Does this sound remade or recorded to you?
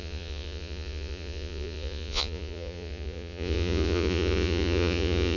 remade